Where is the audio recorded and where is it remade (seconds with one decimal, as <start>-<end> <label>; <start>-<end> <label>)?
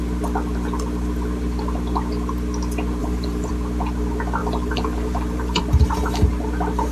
0.0-3.0 recorded; 3.0-3.5 remade; 3.5-4.4 recorded; 4.4-5.6 remade; 5.6-6.9 recorded